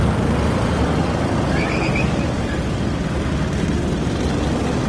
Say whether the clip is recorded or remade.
recorded